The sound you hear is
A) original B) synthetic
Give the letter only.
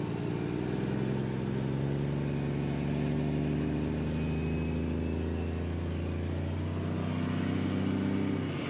A